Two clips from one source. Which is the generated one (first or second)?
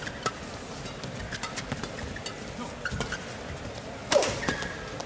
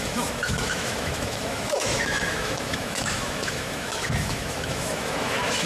second